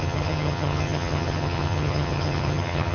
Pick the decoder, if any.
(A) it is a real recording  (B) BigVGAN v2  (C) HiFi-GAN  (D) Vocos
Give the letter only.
C